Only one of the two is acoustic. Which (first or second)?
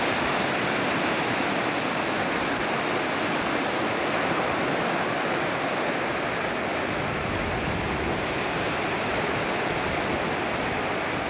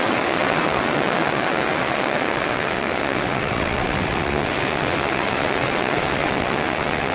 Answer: first